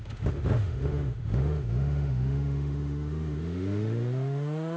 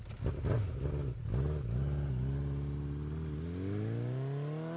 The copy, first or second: first